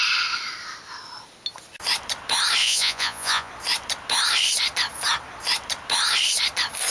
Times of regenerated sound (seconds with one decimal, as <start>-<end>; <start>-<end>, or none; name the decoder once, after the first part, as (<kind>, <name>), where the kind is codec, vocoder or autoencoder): 2.6-3.5 (vocoder, Vocos)